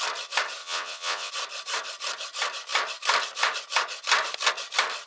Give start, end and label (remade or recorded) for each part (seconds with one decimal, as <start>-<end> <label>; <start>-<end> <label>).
0.0-0.6 recorded; 0.6-1.3 remade; 1.3-5.1 recorded